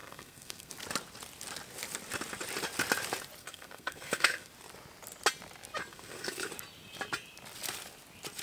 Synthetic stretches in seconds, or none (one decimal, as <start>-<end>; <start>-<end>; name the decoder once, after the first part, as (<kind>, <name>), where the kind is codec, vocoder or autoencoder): 0.0-0.7 (codec, SNAC); 3.4-4.5; 5.9-6.5

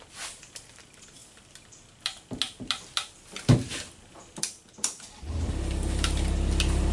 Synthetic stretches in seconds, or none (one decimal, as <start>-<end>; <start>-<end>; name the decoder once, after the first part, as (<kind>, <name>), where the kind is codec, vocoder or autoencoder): none